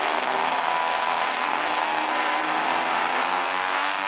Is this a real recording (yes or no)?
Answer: no